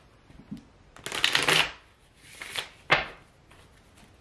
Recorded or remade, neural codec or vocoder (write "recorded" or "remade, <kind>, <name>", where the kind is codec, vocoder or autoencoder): recorded